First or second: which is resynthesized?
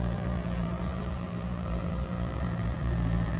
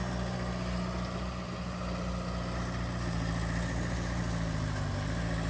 first